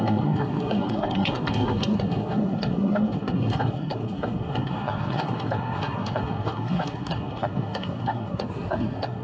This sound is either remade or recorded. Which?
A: remade